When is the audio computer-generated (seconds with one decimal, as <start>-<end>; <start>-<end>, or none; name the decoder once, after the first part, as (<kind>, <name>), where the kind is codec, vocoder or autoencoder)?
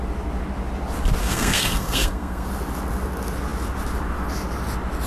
1.2-2.5 (codec, SNAC)